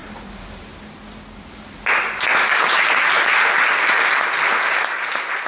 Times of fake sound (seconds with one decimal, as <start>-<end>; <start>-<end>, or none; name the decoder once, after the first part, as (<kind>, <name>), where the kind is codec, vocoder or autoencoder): 0.0-0.8 (vocoder, BigVGAN v2)